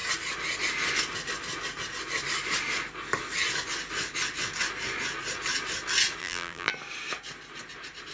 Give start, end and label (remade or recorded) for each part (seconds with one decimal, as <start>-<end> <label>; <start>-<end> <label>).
0.0-6.2 recorded; 6.2-6.7 remade; 6.7-8.1 recorded